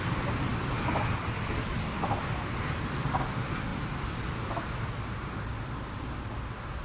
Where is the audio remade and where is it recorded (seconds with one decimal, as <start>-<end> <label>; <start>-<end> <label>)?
0.0-6.8 recorded